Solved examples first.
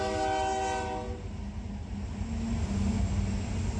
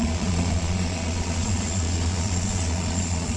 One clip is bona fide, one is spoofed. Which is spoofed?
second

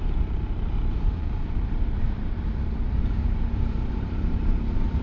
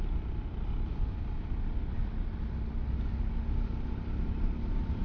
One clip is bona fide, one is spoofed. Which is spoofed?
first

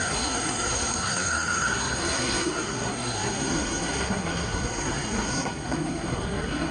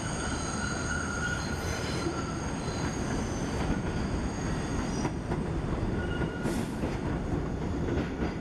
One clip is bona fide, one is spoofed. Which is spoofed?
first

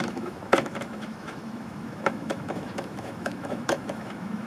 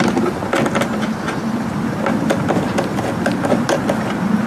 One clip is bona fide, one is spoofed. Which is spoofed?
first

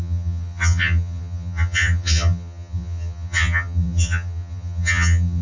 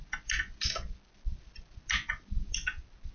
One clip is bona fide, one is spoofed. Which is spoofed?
first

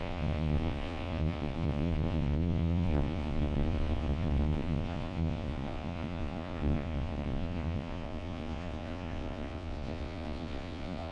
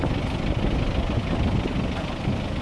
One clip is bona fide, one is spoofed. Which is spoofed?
first